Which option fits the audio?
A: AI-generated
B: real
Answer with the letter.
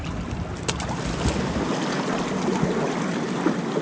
B